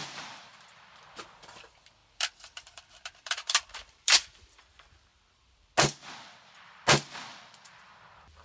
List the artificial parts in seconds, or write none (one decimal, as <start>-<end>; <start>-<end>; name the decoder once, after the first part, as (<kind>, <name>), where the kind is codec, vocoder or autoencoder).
0.0-5.1 (vocoder, BigVGAN v2); 7.7-8.4